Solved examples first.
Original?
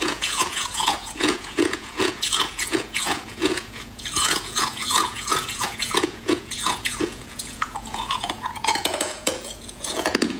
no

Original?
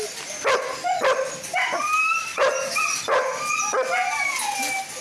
yes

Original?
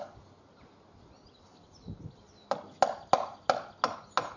yes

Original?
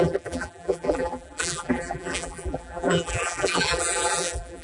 no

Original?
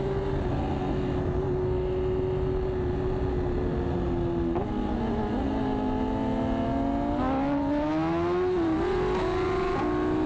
yes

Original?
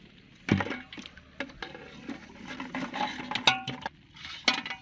yes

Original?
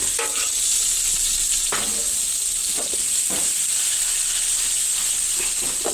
yes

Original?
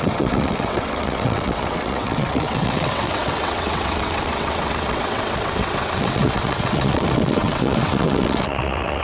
no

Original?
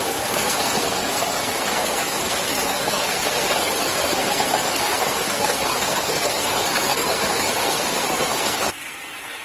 no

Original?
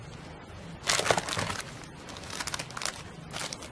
yes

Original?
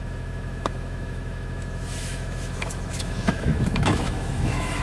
no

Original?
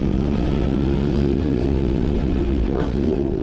no